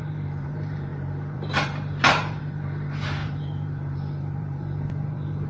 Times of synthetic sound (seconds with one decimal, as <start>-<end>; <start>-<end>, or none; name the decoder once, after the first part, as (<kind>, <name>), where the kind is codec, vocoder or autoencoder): 0.0-5.5 (vocoder, BigVGAN v2)